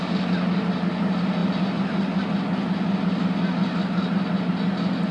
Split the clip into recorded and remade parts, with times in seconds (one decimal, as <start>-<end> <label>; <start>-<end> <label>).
0.0-5.1 recorded